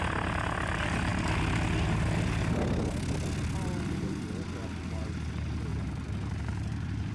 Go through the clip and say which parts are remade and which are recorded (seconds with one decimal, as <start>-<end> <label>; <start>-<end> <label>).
0.0-5.7 recorded; 5.7-7.1 remade